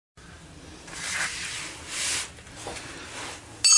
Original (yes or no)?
yes